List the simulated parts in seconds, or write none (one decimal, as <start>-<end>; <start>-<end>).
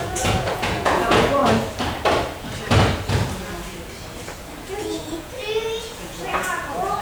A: 0.0-1.4; 4.7-7.0